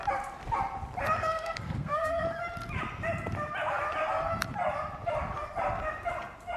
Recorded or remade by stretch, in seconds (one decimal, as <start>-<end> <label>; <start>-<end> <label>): 0.0-1.2 recorded; 1.2-2.2 remade; 2.2-6.6 recorded